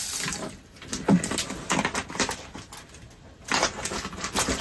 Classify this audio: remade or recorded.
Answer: recorded